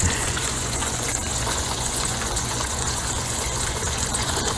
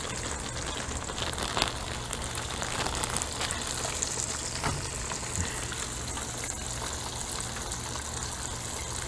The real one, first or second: second